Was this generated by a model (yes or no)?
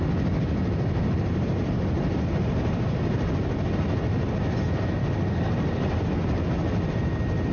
no